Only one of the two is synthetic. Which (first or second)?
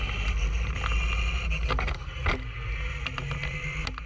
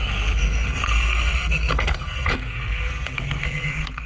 second